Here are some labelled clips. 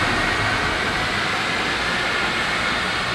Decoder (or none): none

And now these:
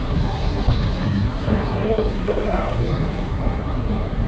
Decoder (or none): codec, SNAC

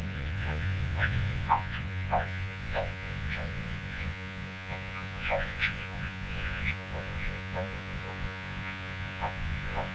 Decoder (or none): vocoder, Vocos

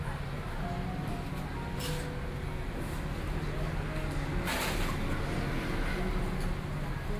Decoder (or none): none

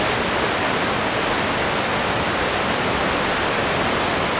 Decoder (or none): none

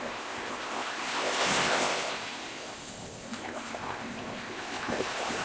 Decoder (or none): codec, ZipCodec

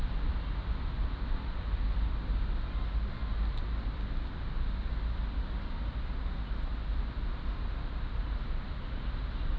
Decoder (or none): none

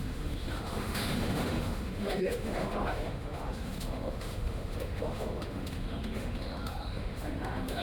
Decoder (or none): autoencoder, DAC-VAE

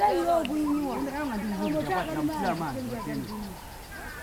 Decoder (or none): none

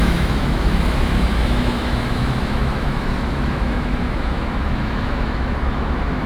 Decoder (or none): autoencoder, DAC-VAE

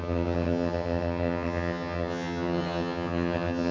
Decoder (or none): vocoder, HiFi-GAN